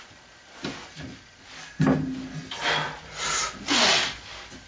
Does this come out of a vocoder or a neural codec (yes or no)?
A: no